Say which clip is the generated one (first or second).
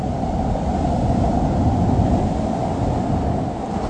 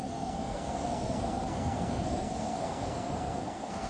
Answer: second